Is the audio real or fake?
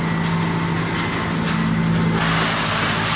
real